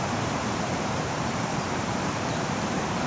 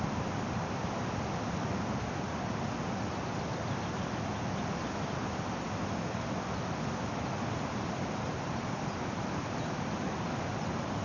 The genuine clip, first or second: second